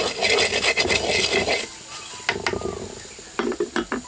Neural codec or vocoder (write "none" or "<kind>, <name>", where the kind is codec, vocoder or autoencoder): none